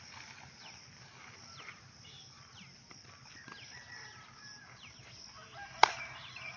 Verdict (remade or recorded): remade